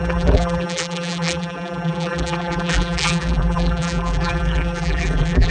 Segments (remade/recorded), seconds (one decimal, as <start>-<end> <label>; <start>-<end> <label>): 0.0-5.5 remade